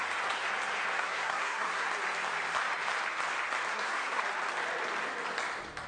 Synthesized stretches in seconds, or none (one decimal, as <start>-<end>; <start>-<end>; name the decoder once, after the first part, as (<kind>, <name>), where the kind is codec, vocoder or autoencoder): 0.9-1.9 (codec, SNAC); 3.7-4.2